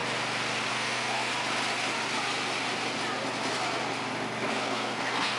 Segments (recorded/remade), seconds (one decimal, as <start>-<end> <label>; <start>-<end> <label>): 0.0-0.7 recorded; 0.7-1.3 remade; 1.3-4.5 recorded; 4.5-5.4 remade